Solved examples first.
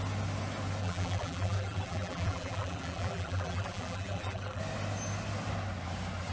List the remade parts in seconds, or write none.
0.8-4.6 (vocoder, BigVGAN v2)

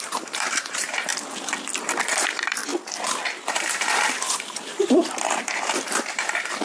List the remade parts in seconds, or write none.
0.0-1.1 (vocoder, BigVGAN v2); 2.0-2.6; 3.5-6.6